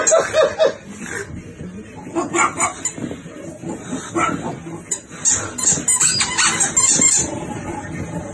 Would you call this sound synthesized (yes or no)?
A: no